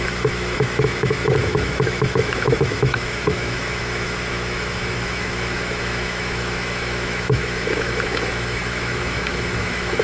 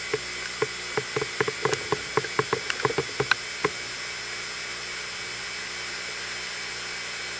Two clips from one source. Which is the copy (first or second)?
first